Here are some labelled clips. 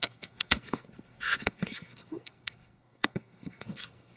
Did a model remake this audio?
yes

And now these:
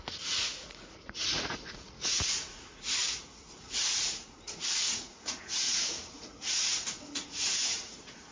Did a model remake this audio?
yes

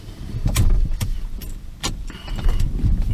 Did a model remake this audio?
yes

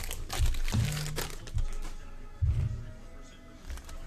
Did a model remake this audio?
no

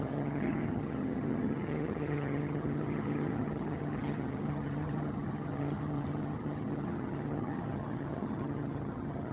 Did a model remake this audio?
yes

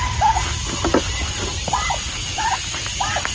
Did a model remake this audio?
no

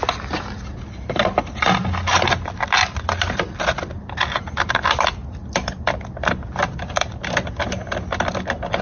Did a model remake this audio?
no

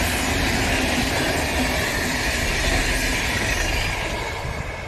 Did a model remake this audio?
no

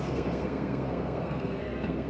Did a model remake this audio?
yes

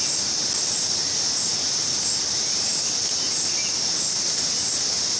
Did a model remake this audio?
no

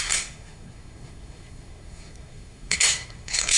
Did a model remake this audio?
yes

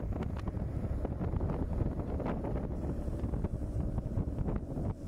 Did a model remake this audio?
no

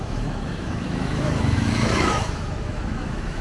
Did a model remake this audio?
yes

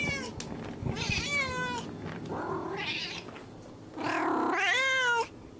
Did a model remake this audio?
no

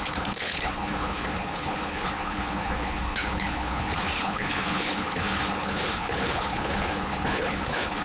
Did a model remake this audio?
yes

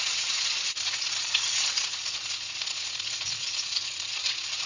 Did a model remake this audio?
yes